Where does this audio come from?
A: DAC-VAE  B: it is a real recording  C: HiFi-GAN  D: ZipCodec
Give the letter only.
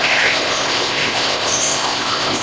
D